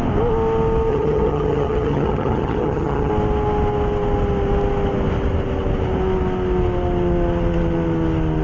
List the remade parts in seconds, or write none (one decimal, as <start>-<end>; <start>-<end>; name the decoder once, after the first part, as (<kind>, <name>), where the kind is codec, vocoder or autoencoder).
0.9-3.1 (vocoder, HiFi-GAN)